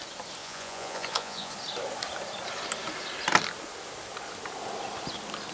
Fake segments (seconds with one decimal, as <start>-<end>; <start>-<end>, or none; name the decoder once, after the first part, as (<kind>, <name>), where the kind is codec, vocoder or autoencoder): 0.4-1.5 (vocoder, Vocos)